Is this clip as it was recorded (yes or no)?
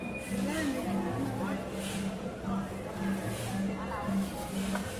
yes